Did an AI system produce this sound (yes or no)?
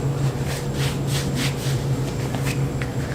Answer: no